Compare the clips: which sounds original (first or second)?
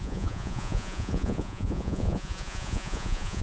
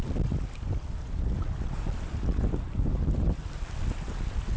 second